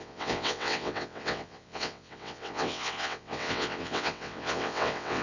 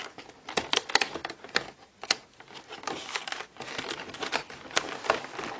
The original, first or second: second